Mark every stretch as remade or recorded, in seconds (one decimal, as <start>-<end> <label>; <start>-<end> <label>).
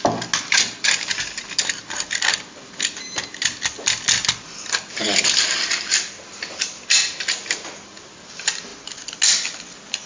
0.0-10.1 recorded